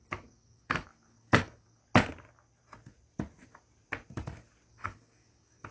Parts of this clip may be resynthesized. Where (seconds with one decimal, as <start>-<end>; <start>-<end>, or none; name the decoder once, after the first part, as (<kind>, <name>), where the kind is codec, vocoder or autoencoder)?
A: 0.0-1.8 (codec, DAC); 4.7-5.7